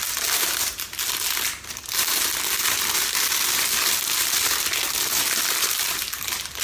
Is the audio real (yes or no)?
yes